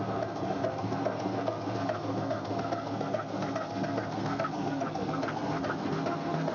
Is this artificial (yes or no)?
yes